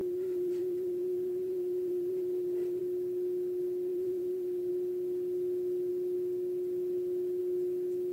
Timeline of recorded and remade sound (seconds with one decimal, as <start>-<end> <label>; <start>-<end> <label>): 0.0-2.8 remade; 2.8-3.9 recorded; 3.9-4.7 remade; 4.7-8.1 recorded